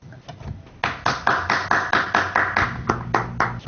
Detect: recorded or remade recorded